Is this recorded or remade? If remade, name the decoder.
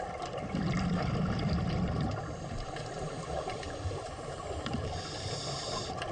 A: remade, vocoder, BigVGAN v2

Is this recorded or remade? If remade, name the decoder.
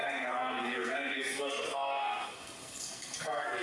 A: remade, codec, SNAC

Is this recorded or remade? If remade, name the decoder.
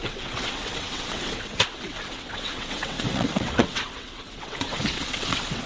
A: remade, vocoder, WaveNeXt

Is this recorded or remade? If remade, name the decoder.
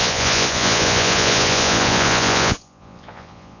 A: remade, vocoder, Vocos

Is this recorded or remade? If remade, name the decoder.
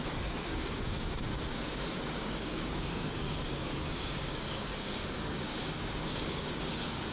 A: remade, codec, DAC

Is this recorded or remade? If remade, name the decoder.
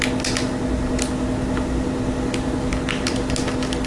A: recorded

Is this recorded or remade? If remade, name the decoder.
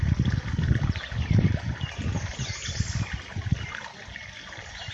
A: recorded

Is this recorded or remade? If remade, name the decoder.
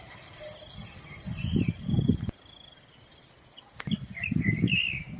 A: recorded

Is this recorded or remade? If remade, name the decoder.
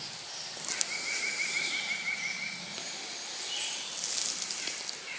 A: recorded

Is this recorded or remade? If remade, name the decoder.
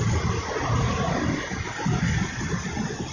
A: recorded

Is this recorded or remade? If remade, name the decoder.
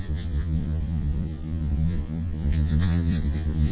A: remade, vocoder, Vocos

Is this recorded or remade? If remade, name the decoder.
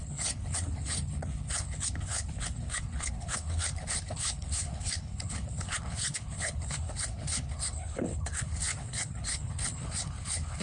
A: remade, codec, HILCodec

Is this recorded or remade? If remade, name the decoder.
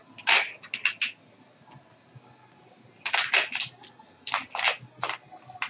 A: recorded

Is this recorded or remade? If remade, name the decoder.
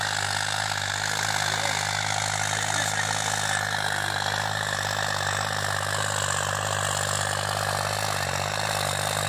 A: recorded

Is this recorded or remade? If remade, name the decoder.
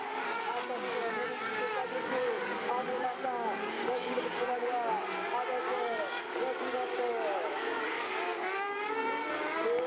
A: remade, codec, DAC